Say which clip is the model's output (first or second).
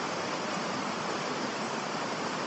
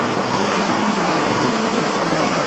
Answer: second